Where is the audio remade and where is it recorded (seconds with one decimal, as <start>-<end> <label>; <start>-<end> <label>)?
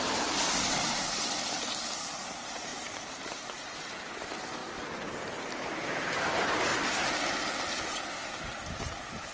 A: 0.0-4.6 remade; 4.6-5.4 recorded; 5.4-6.7 remade; 6.7-7.5 recorded; 7.5-9.3 remade